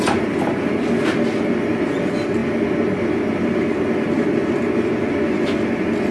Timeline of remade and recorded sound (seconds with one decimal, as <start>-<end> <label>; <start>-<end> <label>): 0.0-6.1 recorded